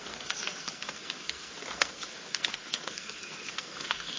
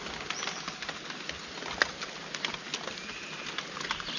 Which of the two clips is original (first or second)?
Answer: second